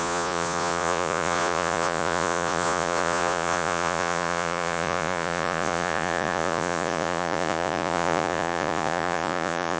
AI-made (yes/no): yes